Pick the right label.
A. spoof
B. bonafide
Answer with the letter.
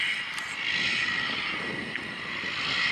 B